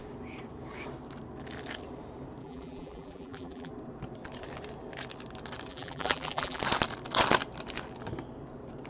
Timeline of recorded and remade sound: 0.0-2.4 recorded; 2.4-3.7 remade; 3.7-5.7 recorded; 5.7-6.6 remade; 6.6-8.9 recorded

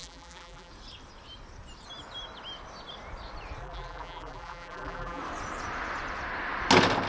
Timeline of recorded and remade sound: 0.0-0.7 remade; 0.7-3.6 recorded; 3.6-5.2 remade; 5.2-7.1 recorded

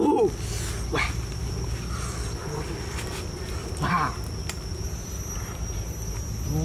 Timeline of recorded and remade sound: 0.0-6.6 recorded

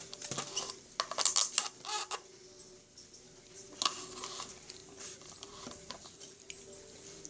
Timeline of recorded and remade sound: 0.0-4.8 recorded; 4.8-6.6 remade; 6.6-7.3 recorded